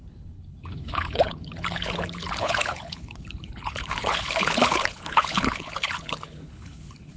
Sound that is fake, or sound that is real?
fake